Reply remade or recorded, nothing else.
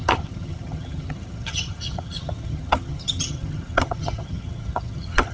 remade